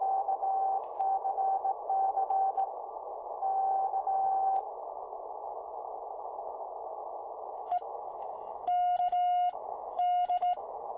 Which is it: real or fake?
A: fake